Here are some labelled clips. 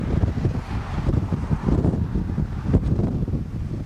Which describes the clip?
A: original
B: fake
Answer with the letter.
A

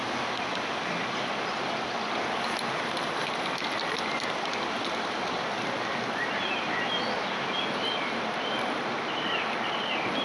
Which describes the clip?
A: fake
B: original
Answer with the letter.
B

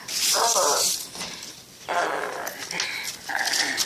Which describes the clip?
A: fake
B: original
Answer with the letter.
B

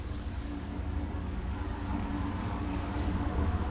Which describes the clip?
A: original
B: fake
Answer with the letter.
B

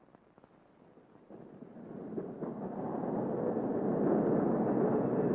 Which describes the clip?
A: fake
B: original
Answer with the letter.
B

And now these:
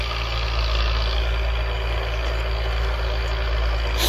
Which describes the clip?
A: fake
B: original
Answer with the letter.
B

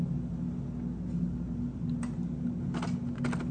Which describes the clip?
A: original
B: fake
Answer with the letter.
A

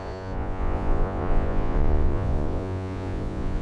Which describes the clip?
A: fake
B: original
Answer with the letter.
A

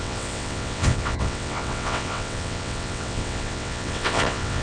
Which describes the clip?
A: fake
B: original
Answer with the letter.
A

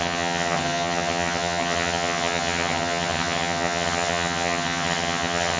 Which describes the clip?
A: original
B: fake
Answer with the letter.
B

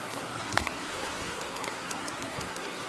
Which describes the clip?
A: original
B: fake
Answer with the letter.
B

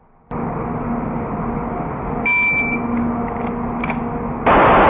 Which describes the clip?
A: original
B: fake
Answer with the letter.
A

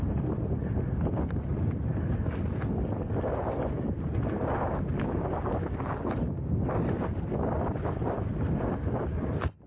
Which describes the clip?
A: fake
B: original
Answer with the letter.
B